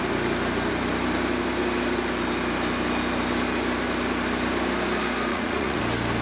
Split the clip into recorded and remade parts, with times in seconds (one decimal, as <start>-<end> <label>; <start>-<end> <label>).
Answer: 0.0-5.3 recorded; 5.3-5.8 remade; 5.8-6.2 recorded